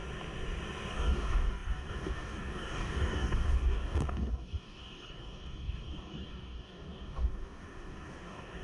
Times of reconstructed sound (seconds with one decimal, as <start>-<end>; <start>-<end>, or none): 0.9-8.6